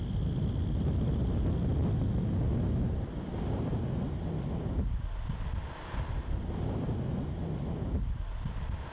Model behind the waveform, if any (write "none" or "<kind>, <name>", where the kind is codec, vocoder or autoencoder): none